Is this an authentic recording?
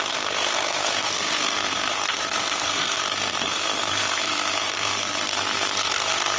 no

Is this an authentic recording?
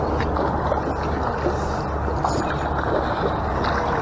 yes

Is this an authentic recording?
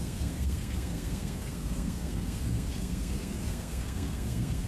no